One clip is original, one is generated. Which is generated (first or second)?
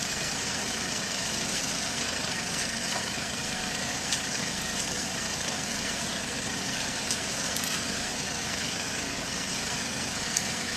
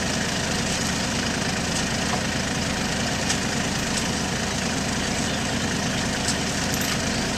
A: first